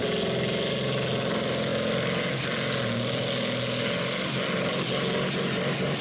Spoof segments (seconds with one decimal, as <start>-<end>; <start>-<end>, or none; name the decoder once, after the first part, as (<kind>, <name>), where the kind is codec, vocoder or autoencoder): none